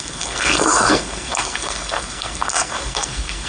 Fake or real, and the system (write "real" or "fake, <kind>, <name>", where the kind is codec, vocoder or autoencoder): fake, codec, SNAC